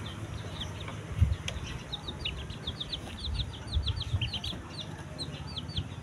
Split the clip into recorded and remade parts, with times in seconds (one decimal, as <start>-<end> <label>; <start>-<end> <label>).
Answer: 0.0-6.0 recorded